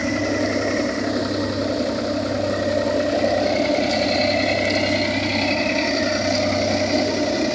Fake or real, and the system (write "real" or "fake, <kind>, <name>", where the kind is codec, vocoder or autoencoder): real